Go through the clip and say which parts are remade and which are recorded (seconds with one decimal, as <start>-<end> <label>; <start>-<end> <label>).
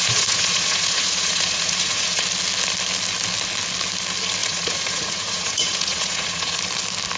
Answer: 0.0-2.2 remade; 2.2-4.4 recorded; 4.4-6.6 remade; 6.6-7.2 recorded